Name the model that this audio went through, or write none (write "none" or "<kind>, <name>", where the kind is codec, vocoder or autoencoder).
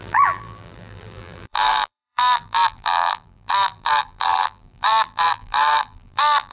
vocoder, BigVGAN v2